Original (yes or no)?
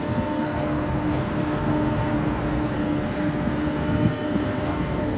no